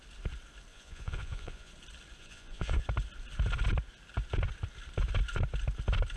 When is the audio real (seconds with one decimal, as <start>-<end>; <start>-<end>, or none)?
0.0-0.7; 1.7-2.2; 2.8-6.2